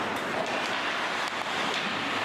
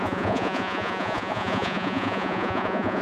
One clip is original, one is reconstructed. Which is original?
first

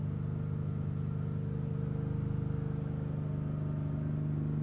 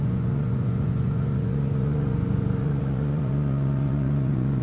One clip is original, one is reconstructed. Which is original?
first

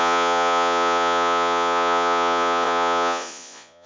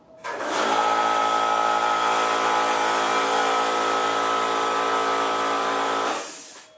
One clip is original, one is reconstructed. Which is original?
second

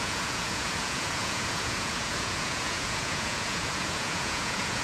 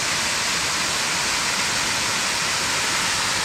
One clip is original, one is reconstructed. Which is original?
second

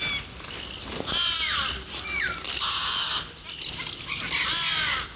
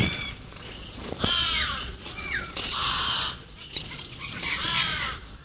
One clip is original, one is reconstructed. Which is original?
first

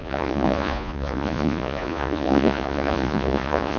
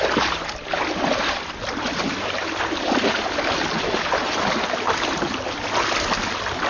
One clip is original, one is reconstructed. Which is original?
second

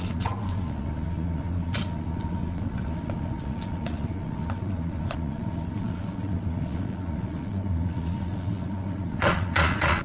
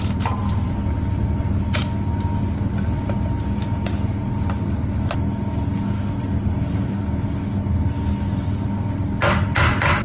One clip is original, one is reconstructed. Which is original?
second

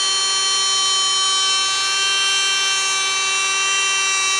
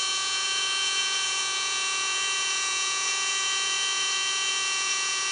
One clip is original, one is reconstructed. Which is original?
first